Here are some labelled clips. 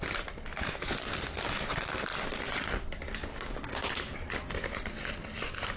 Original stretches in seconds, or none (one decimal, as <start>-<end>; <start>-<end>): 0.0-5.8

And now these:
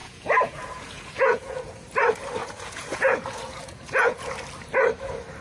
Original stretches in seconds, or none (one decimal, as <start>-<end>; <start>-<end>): 1.6-2.4; 4.3-5.4

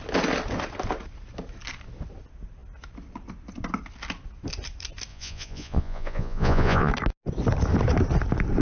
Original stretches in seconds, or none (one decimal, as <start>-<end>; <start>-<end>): 0.0-5.1; 6.9-8.6

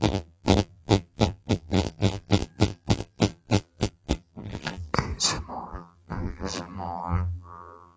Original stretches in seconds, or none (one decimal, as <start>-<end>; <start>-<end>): 4.9-5.7

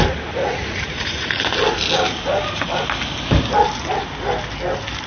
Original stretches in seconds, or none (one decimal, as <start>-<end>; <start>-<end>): 0.0-0.4; 1.4-5.1

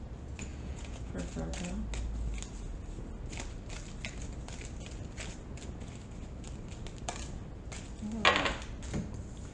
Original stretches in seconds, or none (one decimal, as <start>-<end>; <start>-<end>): 0.0-0.5; 1.2-9.5

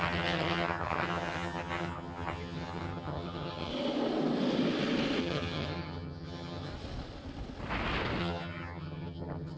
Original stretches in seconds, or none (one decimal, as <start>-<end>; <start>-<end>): 3.7-5.2; 6.7-8.2

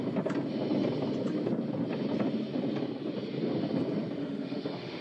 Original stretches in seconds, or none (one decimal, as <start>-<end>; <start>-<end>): 0.0-4.2